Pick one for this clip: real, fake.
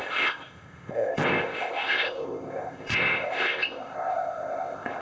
fake